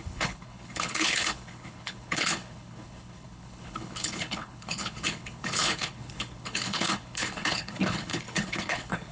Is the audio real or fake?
fake